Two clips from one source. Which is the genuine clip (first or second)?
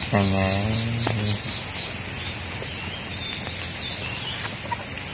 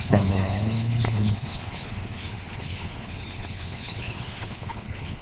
first